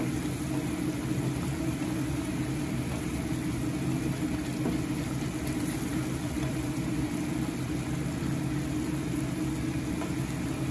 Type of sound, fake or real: real